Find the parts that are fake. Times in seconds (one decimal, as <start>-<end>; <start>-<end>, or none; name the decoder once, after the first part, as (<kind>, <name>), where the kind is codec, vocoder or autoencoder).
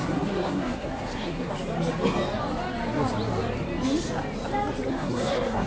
0.0-1.5 (codec, SNAC); 4.9-5.7